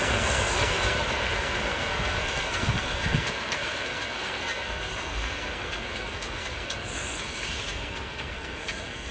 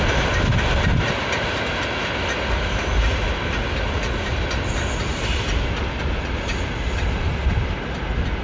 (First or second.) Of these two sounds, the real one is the second